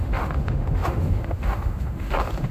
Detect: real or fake fake